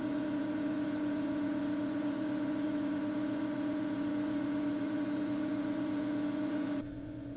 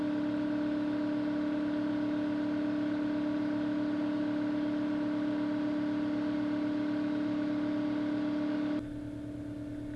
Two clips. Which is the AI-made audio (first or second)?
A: first